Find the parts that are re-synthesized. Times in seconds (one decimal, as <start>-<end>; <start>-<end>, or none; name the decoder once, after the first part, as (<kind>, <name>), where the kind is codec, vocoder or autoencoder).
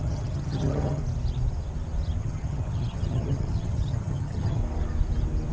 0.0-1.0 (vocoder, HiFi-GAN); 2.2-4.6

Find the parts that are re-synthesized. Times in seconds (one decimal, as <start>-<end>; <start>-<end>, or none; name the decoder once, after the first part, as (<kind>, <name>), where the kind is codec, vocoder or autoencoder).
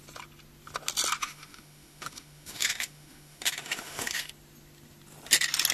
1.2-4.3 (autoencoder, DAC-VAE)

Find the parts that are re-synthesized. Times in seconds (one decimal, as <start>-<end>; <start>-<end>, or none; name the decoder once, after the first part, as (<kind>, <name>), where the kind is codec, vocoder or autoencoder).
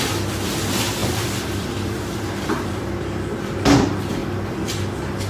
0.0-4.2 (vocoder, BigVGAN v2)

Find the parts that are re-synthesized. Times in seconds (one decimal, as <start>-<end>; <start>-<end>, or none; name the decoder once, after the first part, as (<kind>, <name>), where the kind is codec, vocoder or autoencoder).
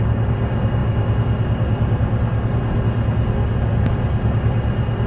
none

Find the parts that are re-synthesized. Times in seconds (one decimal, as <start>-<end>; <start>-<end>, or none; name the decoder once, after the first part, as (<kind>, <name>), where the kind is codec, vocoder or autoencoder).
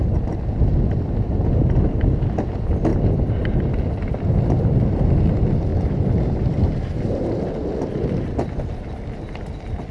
none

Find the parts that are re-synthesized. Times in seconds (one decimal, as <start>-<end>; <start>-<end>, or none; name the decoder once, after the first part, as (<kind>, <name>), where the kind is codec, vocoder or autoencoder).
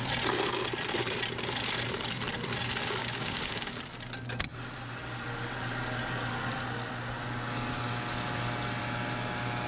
3.0-3.8 (codec, DAC)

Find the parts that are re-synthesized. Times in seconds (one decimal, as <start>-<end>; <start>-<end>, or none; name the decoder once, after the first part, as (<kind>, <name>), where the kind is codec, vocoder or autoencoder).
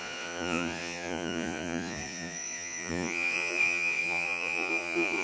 0.0-5.2 (vocoder, Vocos)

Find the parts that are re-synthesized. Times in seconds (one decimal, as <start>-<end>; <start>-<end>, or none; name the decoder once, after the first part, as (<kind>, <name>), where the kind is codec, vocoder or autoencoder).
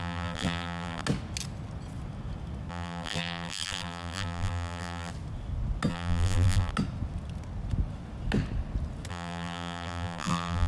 0.0-1.0 (vocoder, BigVGAN v2); 2.7-5.1; 5.9-6.7; 9.1-10.7